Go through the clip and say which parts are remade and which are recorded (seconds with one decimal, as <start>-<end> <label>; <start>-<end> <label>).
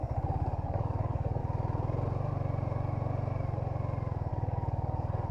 0.0-1.4 remade; 1.4-4.3 recorded; 4.3-5.3 remade